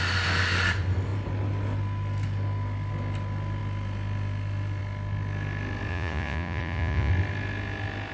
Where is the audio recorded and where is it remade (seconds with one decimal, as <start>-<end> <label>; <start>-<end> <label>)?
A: 0.0-5.9 recorded; 5.9-7.1 remade; 7.1-8.1 recorded